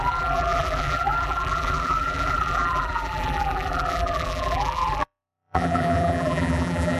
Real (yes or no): no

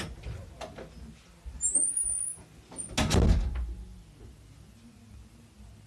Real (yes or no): yes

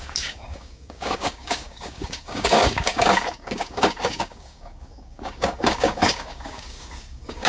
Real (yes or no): no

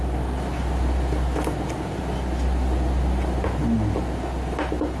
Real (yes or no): yes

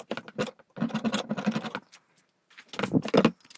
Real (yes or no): yes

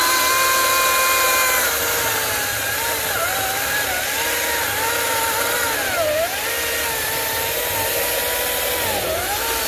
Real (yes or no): yes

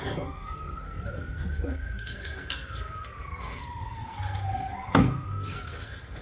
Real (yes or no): no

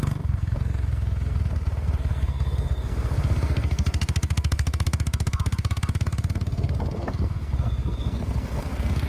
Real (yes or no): no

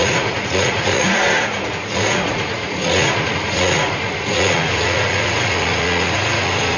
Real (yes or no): no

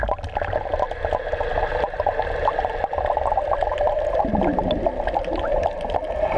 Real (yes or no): yes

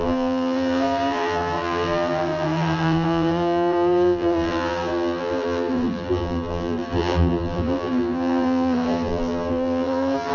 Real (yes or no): no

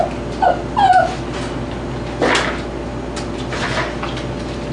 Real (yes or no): yes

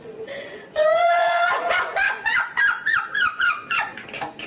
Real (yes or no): no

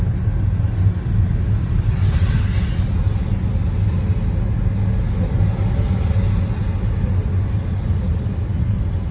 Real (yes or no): yes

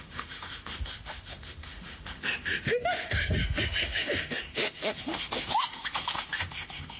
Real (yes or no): no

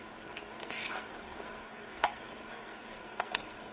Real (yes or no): no